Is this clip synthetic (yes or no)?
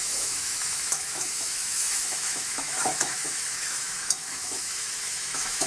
yes